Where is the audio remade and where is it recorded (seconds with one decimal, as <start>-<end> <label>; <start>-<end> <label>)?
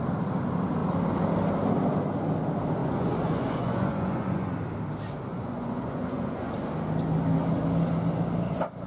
0.0-2.8 recorded; 2.8-4.5 remade; 4.5-5.3 recorded; 5.3-6.5 remade; 6.5-8.9 recorded